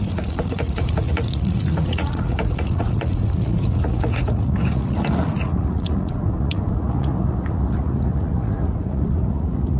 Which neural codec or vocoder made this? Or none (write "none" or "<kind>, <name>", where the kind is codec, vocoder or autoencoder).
vocoder, Vocos